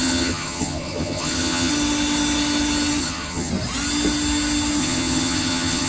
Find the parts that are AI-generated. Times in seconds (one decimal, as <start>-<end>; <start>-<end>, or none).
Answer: 0.0-1.7; 3.0-3.5; 4.8-5.9